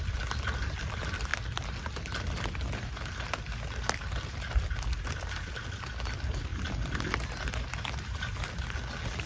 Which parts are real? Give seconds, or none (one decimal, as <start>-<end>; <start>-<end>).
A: 0.0-9.3